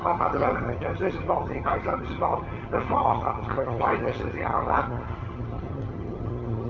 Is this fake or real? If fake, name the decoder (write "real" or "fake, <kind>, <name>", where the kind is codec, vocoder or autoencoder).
fake, vocoder, HiFi-GAN